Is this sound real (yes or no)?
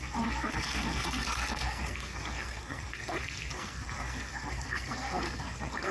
no